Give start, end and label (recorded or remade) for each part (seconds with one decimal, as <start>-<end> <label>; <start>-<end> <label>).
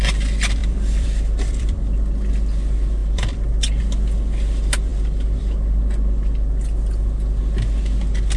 0.0-0.6 recorded; 0.6-1.8 remade; 1.8-3.0 recorded; 3.0-3.8 remade; 3.8-8.4 recorded